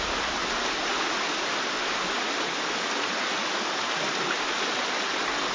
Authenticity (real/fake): real